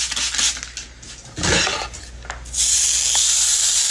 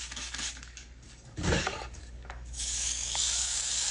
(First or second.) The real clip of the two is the first